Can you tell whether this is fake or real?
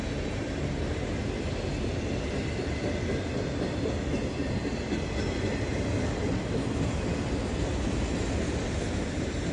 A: real